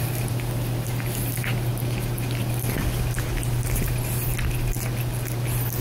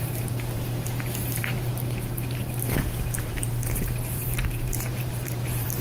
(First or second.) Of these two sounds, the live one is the first